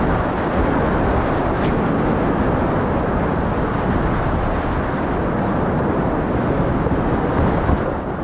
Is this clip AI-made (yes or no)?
no